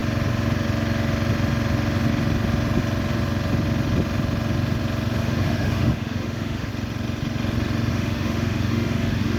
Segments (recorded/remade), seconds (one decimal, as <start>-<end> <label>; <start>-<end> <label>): 0.0-5.2 recorded; 5.2-6.7 remade; 6.7-7.9 recorded; 7.9-9.4 remade